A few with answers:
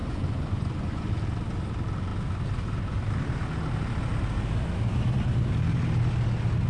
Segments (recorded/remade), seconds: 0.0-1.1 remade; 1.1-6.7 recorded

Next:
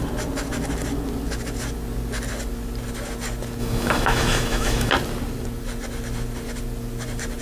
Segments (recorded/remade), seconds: 0.0-3.6 recorded; 3.6-4.9 remade; 4.9-7.4 recorded